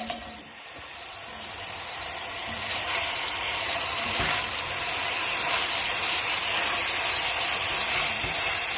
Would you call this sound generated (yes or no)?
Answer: yes